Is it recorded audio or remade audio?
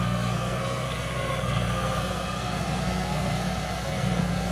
remade